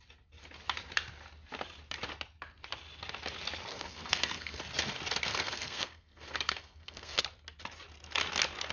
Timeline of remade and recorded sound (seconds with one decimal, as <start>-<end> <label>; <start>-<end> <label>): 0.0-3.7 recorded; 3.7-4.6 remade; 4.6-5.3 recorded; 5.3-7.2 remade; 7.2-8.7 recorded